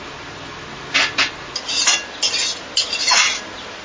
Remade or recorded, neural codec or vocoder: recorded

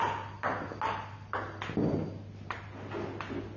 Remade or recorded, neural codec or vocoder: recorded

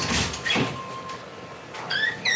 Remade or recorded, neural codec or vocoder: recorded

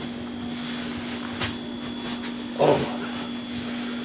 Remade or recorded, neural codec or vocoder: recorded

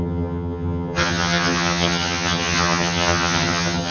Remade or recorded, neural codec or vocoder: remade, vocoder, HiFi-GAN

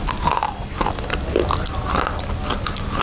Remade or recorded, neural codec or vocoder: recorded